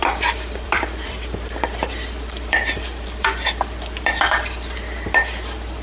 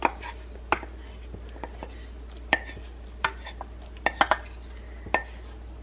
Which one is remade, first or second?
first